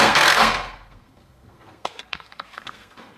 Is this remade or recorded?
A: remade